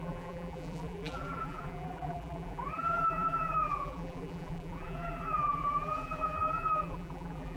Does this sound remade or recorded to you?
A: remade